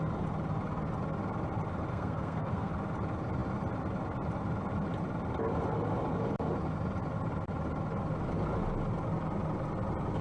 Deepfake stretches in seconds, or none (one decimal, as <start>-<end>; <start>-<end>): 1.9-2.7